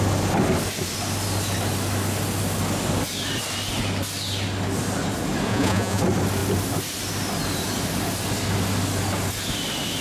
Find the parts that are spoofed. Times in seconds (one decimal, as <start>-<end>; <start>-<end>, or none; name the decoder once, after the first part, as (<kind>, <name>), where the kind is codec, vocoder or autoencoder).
5.5-6.0 (vocoder, Vocos)